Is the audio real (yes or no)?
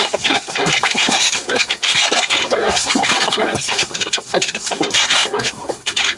no